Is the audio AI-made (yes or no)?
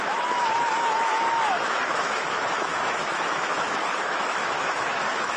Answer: yes